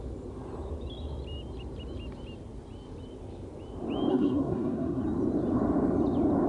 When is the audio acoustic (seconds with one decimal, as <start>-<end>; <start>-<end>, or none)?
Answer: 0.0-4.1; 5.0-6.5